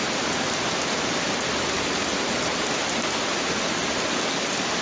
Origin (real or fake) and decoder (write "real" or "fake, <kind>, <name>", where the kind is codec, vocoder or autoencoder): real